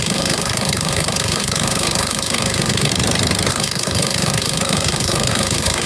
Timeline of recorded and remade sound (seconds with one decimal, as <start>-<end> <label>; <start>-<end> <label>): 0.0-2.9 remade; 2.9-3.5 recorded; 3.5-5.9 remade